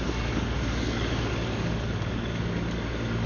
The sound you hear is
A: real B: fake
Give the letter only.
B